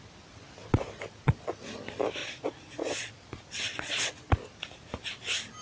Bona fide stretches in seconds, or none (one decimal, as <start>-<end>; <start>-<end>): 0.0-2.2; 3.1-3.7; 4.3-5.6

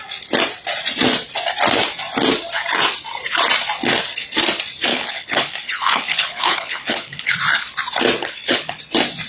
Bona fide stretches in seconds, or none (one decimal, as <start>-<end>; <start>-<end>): 0.0-4.9; 7.3-8.2; 8.8-9.3

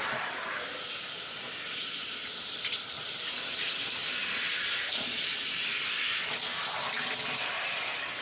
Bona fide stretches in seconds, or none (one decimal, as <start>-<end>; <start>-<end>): 0.0-1.8; 3.1-8.2

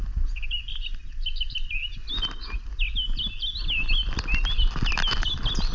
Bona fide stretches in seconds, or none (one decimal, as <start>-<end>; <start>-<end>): 0.0-5.7

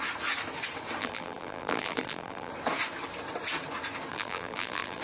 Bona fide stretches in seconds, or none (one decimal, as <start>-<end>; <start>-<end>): 0.0-1.0; 2.5-4.1

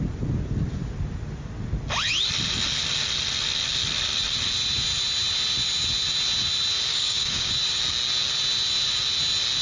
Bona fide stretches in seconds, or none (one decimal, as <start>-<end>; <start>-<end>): 0.0-6.9; 7.5-9.6